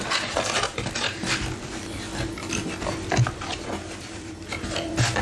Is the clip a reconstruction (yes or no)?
yes